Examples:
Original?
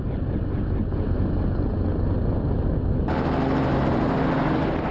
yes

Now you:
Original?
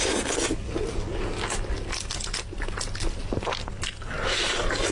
yes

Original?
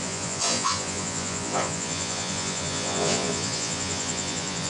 no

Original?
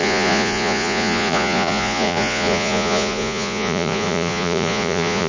no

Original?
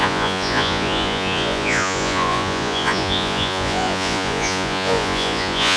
no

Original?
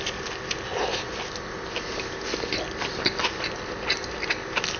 yes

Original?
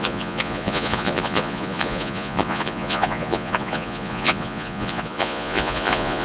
no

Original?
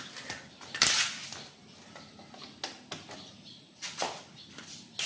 yes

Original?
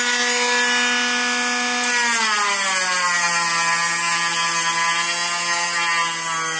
yes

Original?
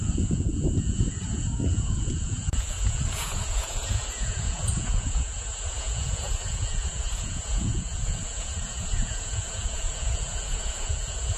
no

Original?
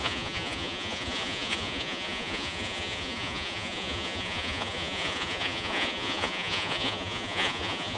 no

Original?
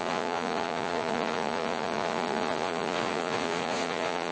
no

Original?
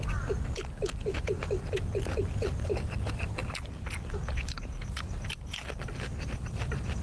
yes